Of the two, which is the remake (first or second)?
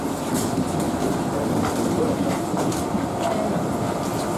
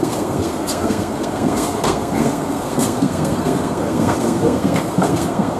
second